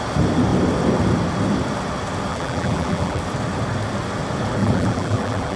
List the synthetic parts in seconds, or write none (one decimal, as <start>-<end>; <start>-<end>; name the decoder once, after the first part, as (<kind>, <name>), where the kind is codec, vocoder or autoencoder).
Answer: 2.3-3.2 (vocoder, BigVGAN v2); 4.6-5.6